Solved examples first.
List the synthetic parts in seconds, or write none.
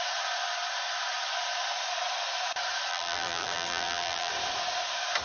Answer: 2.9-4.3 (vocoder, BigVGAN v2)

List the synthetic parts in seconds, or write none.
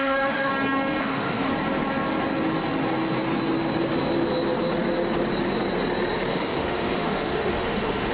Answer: 0.0-0.5 (autoencoder, DAC-VAE); 1.0-1.5; 6.3-8.1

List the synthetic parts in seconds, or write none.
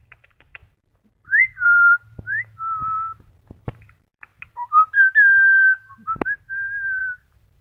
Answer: 0.0-4.3 (vocoder, BigVGAN v2); 7.0-7.6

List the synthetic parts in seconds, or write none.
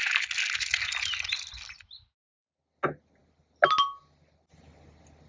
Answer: none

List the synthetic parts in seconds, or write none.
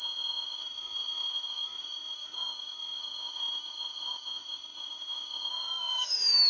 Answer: 0.0-6.5 (autoencoder, DAC-VAE)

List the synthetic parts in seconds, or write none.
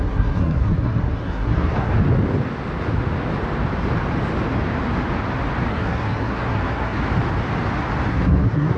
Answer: 0.0-1.9 (codec, SNAC); 5.7-7.0; 8.1-8.8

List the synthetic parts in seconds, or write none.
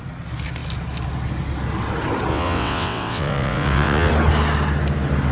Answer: 2.3-4.1 (vocoder, WaveNeXt)